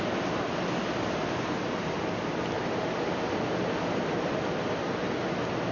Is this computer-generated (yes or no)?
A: no